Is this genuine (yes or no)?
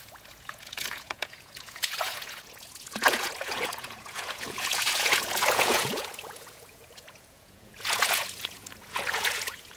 no